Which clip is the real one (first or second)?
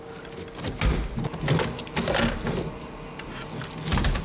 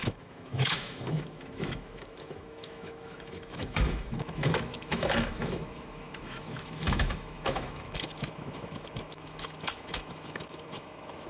first